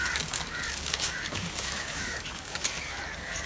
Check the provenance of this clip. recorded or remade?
remade